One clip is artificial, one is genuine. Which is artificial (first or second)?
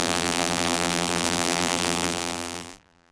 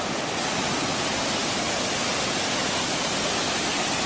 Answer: first